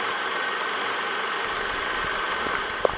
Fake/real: real